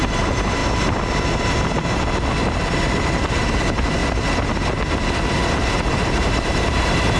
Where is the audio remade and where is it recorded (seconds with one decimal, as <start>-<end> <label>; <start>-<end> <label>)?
0.0-0.6 remade; 0.6-3.4 recorded; 3.4-4.0 remade; 4.0-5.9 recorded; 5.9-7.2 remade